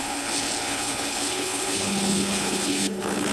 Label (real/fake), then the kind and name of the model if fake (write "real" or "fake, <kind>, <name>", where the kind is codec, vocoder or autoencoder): fake, codec, HILCodec